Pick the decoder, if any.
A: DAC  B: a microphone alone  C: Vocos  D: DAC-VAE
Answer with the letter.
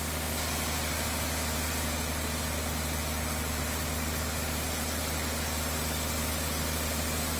B